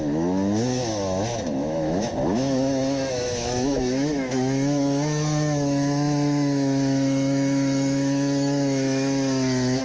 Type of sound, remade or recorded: remade